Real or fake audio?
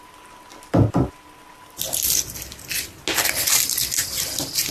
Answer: real